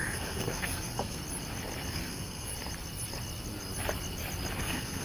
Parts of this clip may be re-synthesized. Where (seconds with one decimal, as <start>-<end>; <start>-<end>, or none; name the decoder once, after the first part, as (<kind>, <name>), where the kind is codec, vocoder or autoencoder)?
0.0-1.2 (codec, SNAC); 1.9-2.5; 4.6-5.0